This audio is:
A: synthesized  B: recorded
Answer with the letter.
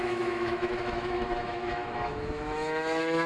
A